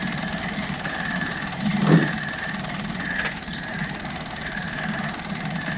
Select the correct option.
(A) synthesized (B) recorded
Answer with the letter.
A